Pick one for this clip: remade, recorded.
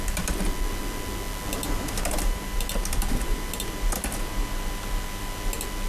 recorded